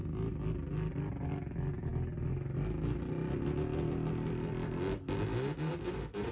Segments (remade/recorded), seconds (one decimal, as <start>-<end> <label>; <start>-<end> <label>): 0.0-6.3 recorded